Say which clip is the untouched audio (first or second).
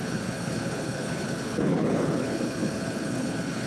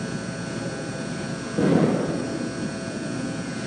second